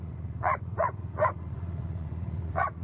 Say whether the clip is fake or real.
fake